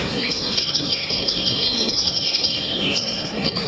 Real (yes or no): no